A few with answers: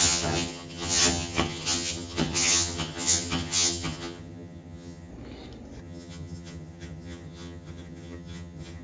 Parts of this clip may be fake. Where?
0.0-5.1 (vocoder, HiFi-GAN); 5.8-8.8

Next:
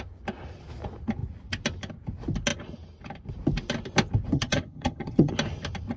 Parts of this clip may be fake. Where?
4.3-5.3 (vocoder, HiFi-GAN)

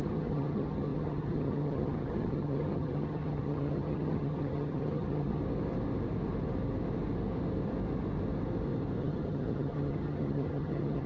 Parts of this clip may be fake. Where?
0.0-5.4 (vocoder, HiFi-GAN); 9.0-11.1